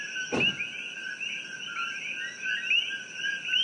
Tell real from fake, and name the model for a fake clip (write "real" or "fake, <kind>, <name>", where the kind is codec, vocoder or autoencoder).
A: real